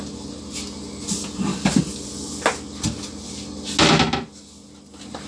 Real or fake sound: real